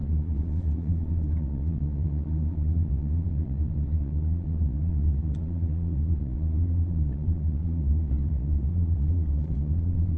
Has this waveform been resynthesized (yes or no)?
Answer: yes